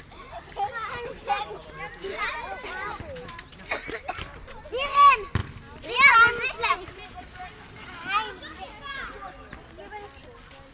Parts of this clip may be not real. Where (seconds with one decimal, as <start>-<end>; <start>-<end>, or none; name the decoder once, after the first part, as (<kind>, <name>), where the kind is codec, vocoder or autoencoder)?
none